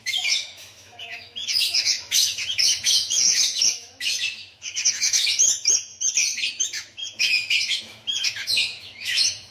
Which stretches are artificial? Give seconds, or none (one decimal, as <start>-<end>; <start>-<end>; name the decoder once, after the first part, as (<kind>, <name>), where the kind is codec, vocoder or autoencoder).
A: 0.0-5.9 (autoencoder, DAC-VAE); 6.5-9.5